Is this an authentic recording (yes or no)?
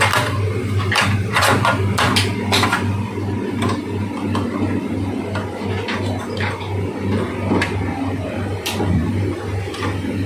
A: yes